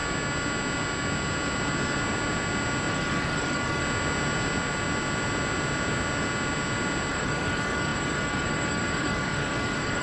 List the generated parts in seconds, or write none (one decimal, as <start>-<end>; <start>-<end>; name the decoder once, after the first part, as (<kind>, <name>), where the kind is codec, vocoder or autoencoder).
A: 2.9-3.8 (codec, DAC); 7.1-10.0